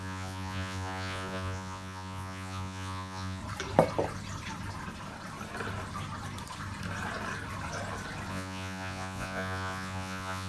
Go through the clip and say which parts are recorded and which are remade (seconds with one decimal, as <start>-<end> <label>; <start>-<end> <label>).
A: 0.0-3.4 remade; 3.4-8.3 recorded; 8.3-10.5 remade